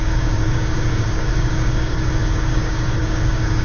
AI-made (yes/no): yes